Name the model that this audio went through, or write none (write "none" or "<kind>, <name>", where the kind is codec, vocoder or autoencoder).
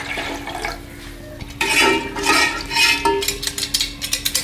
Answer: none